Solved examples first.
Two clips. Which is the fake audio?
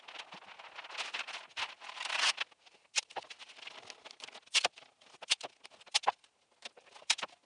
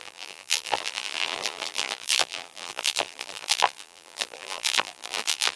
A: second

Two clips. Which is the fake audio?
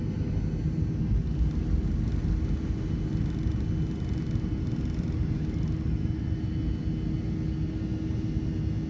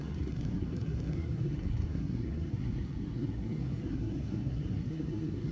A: second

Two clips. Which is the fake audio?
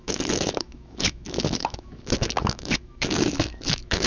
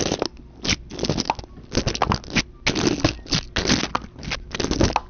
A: first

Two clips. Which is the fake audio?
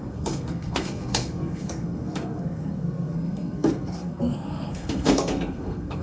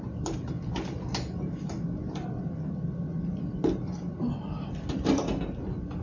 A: first